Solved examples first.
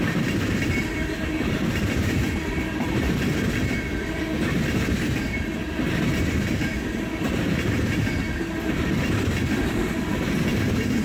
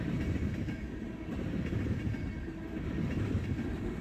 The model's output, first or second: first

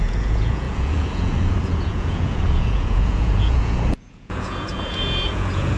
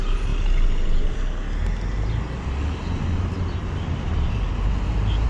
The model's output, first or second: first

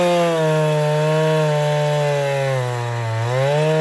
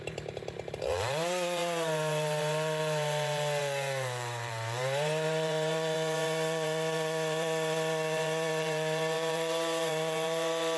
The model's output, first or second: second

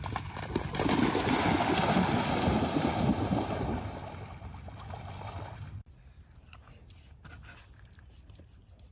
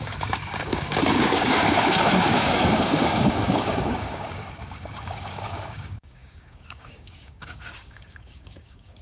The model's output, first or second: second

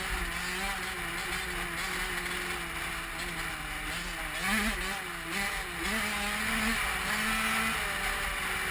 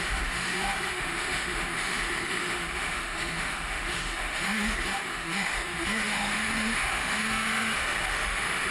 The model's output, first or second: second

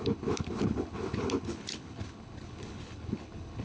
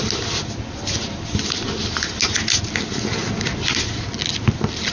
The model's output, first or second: first